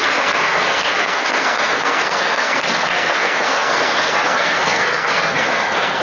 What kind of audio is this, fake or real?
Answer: fake